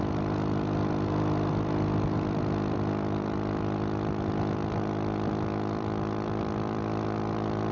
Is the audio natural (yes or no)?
no